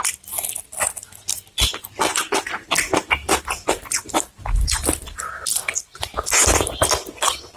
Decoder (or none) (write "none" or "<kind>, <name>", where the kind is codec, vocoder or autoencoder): none